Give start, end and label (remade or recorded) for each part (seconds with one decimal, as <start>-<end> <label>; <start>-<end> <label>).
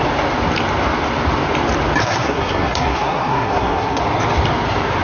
0.0-2.0 recorded; 2.0-4.0 remade; 4.0-5.0 recorded